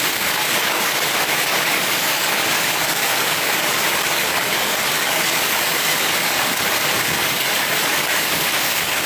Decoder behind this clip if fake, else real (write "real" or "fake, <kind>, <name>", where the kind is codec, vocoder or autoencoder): fake, codec, DAC